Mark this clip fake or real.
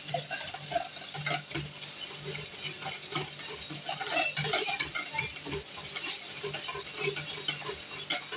real